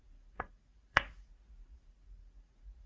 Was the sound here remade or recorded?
remade